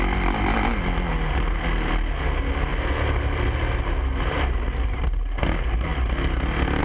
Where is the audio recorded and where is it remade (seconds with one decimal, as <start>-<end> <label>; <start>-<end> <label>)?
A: 0.0-6.8 recorded